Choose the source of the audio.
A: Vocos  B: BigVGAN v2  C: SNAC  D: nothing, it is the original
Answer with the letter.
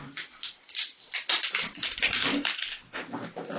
D